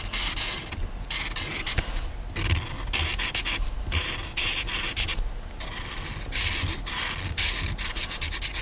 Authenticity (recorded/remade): recorded